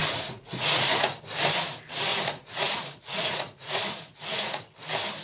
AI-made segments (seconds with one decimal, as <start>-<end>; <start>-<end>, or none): 0.0-1.1; 2.1-4.6